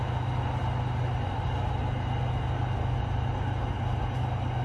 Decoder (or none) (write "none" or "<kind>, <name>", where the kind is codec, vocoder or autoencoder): none